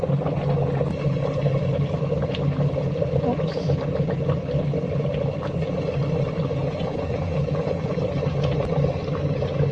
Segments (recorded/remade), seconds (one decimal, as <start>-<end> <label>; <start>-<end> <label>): 0.0-6.6 recorded; 6.6-7.9 remade; 7.9-9.7 recorded